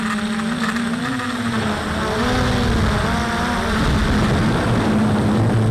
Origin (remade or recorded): recorded